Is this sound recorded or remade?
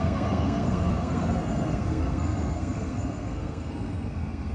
remade